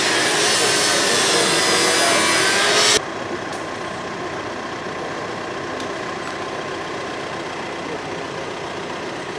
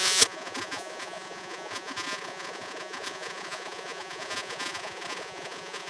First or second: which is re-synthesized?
second